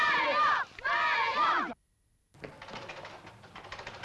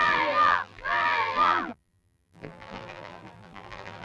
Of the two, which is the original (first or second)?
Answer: first